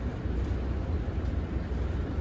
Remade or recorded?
recorded